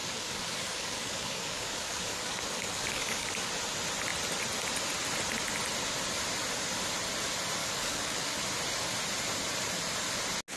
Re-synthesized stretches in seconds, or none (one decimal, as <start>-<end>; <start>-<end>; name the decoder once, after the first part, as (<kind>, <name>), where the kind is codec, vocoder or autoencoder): 0.0-3.5 (codec, DAC); 7.6-8.4